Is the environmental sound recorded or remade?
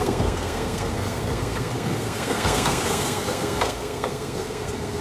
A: remade